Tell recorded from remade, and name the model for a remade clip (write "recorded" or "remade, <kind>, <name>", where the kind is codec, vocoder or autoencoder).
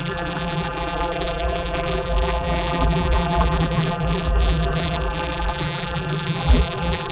remade, vocoder, BigVGAN v2